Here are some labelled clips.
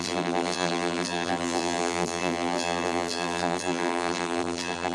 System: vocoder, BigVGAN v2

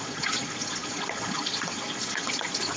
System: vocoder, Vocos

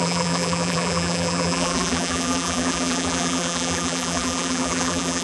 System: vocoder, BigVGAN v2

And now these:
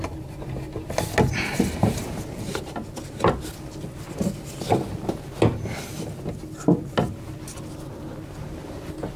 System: none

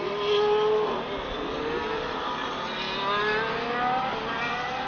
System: none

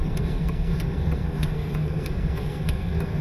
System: codec, SNAC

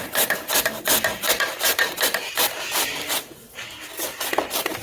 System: none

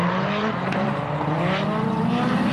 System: vocoder, BigVGAN v2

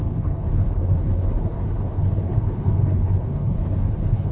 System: codec, HILCodec